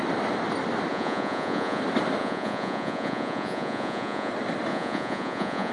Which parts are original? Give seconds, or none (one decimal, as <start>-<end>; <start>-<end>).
0.0-0.9; 1.8-2.2; 4.3-4.7